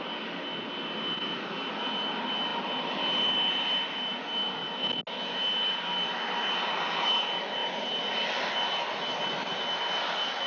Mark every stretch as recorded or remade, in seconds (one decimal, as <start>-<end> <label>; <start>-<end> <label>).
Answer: 0.0-7.6 recorded; 7.6-8.5 remade; 8.5-10.5 recorded